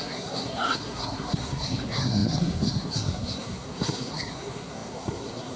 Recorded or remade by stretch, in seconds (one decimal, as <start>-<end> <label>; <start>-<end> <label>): 0.0-5.6 remade

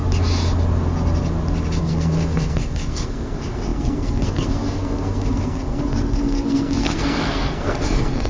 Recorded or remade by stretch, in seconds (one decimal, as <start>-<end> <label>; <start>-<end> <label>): 0.0-1.8 recorded; 1.8-8.3 remade

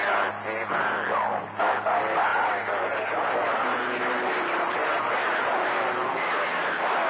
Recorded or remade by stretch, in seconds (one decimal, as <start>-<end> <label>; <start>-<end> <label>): 0.0-7.1 recorded

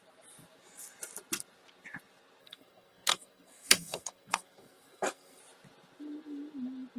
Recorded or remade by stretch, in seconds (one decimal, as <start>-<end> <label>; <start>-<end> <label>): 0.0-2.4 recorded; 2.4-5.4 remade; 5.4-7.0 recorded

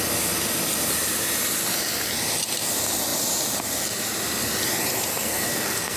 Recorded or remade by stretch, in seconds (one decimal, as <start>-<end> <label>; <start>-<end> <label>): 0.0-5.1 recorded; 5.1-6.0 remade